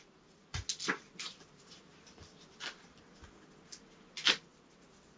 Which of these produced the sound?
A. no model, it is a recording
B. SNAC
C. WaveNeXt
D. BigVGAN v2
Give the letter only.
A